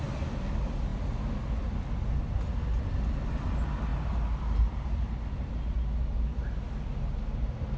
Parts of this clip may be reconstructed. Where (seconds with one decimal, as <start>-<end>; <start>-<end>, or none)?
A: none